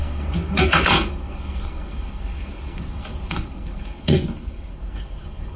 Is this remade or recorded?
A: remade